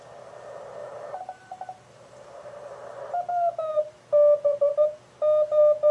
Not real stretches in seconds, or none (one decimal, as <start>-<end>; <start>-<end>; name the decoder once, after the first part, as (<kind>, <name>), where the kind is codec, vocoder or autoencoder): 0.8-3.0 (vocoder, BigVGAN v2)

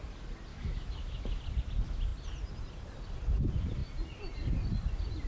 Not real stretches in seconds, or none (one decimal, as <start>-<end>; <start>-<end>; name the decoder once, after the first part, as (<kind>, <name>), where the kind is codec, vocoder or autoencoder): 0.5-1.4 (autoencoder, DAC-VAE)

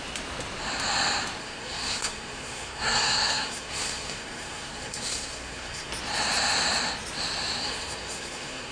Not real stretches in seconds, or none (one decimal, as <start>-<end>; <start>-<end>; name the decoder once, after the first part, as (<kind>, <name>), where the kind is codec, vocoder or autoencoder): 1.4-5.9 (codec, SNAC); 7.6-8.7

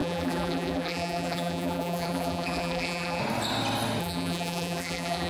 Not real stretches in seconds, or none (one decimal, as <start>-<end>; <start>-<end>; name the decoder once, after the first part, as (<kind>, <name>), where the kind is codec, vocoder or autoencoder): 0.0-3.2 (vocoder, BigVGAN v2); 4.0-5.3

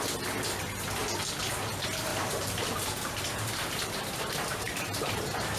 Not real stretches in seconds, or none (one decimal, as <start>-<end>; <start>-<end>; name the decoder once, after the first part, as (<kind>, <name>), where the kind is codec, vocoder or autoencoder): 2.1-5.6 (vocoder, BigVGAN v2)

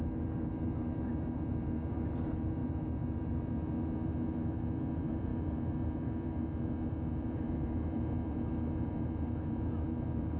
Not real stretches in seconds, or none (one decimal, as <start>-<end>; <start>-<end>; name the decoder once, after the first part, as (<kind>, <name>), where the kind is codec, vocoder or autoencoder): 0.0-10.4 (vocoder, BigVGAN v2)

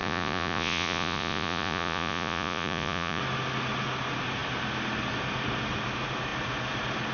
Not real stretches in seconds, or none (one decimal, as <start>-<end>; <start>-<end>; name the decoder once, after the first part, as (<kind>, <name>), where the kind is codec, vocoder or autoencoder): 0.0-3.2 (vocoder, Vocos)